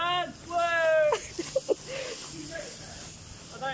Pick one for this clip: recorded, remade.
recorded